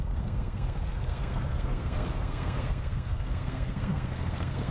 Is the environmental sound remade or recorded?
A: remade